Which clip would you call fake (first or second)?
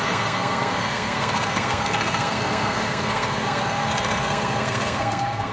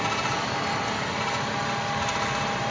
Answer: first